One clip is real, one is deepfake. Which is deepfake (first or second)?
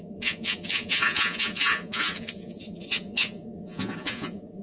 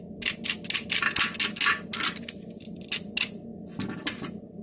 first